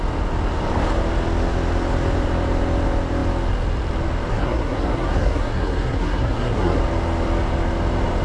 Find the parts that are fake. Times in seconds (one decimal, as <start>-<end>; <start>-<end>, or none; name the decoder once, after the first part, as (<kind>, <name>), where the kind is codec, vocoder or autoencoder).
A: 4.3-6.8 (codec, SNAC)